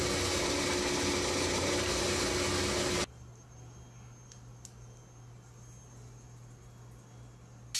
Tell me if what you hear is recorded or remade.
recorded